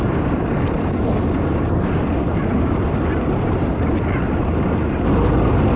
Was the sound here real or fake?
real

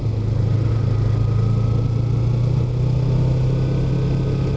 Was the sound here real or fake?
real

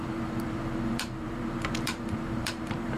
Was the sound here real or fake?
fake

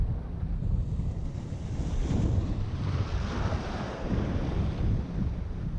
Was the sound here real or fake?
real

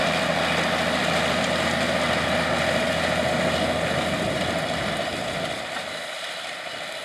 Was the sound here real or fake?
real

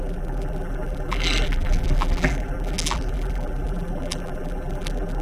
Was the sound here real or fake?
fake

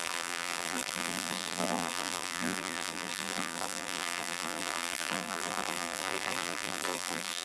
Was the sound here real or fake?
fake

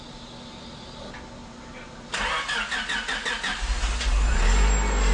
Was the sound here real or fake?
real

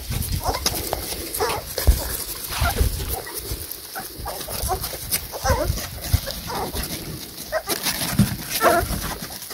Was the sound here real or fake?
real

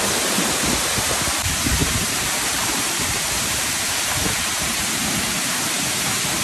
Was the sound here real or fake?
fake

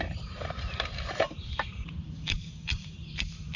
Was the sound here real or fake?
fake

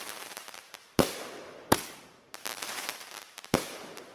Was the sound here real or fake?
fake